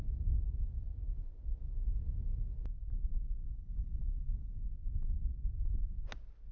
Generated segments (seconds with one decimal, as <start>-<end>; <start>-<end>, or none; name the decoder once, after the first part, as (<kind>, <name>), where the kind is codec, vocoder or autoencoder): 3.4-4.6 (codec, HILCodec)